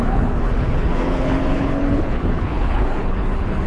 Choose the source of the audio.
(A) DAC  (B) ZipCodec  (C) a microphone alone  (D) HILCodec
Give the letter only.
D